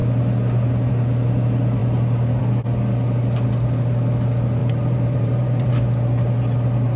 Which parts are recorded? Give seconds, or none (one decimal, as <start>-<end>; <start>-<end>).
0.0-4.6; 5.7-7.0